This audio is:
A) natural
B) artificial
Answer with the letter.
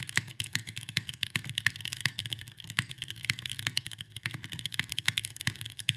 B